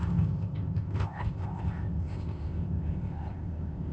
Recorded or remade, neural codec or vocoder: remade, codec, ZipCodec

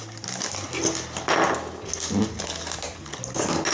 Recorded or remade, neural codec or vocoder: recorded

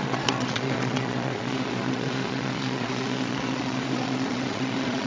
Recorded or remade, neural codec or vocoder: remade, vocoder, Vocos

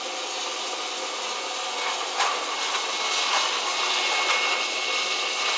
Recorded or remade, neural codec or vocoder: recorded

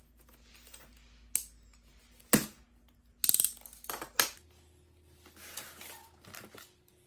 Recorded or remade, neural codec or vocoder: recorded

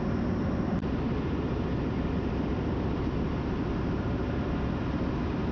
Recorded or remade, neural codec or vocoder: remade, vocoder, BigVGAN v2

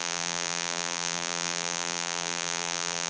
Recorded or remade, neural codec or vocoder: remade, vocoder, BigVGAN v2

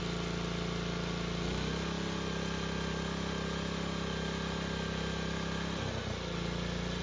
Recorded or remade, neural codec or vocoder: recorded